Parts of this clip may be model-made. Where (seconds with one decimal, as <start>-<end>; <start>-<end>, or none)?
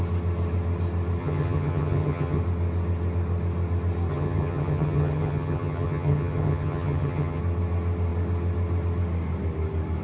1.2-2.4; 4.1-7.4